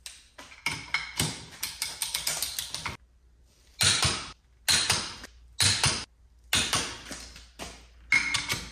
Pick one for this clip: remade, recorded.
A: recorded